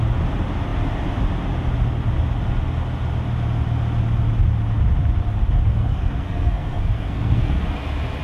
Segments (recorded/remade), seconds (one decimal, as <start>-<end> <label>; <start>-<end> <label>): 0.0-5.7 recorded; 5.7-7.6 remade; 7.6-8.2 recorded